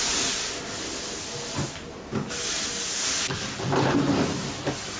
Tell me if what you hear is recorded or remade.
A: recorded